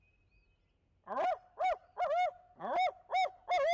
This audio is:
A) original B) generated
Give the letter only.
A